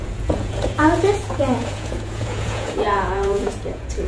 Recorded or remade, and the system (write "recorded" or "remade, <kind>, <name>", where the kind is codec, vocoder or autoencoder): remade, vocoder, Vocos